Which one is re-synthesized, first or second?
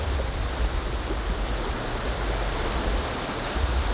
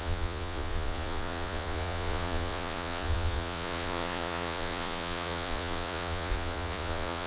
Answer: second